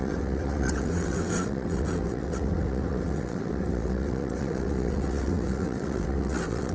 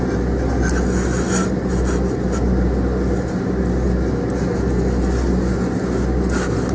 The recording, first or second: second